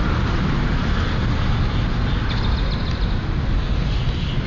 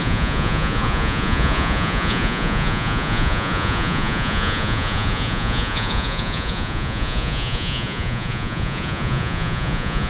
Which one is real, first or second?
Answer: first